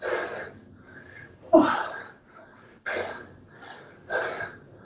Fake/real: real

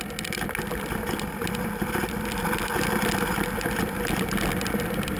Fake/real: real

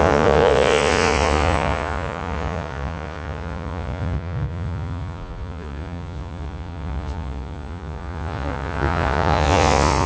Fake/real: fake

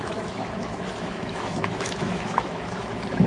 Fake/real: fake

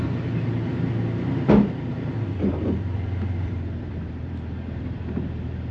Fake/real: fake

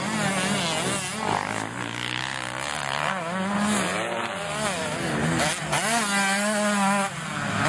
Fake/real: real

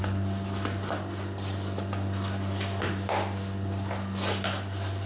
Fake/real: real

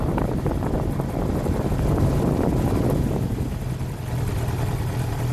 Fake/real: fake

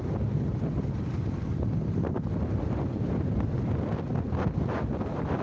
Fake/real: real